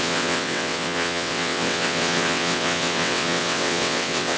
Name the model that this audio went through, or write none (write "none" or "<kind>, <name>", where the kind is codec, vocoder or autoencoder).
vocoder, WaveNeXt